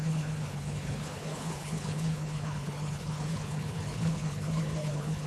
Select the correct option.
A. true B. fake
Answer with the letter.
B